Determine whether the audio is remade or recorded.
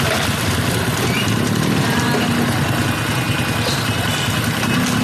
recorded